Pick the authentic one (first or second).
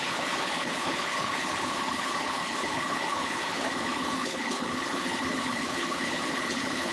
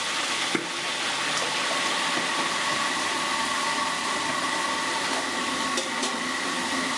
second